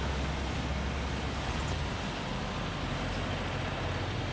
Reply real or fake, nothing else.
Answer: real